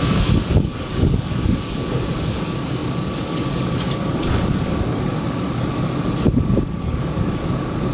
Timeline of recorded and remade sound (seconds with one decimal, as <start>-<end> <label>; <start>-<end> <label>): 0.0-7.9 remade